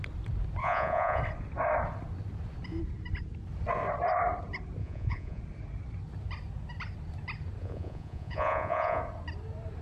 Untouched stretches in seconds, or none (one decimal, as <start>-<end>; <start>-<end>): 0.0-0.6; 1.2-4.8; 5.4-7.6; 9.0-9.8